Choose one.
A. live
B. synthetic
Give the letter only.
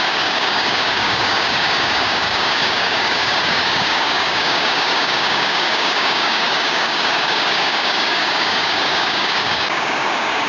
B